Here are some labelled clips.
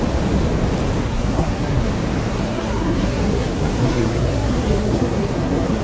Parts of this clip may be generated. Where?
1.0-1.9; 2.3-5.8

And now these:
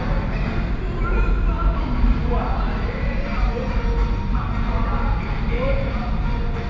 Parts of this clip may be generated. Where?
none

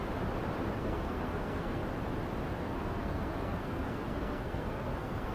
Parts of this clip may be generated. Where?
0.7-1.8; 2.6-5.3

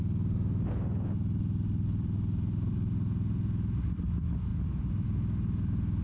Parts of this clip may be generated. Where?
none

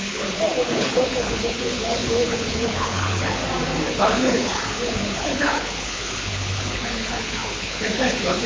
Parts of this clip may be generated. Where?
0.0-3.4; 3.9-8.5

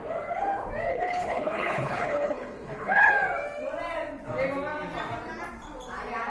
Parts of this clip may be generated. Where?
0.9-3.1

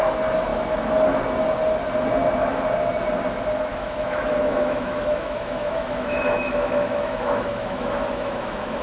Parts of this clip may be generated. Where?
3.7-8.8